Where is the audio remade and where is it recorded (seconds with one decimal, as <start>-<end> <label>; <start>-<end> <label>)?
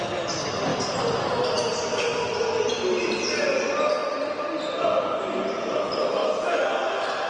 0.0-6.2 recorded; 6.2-7.3 remade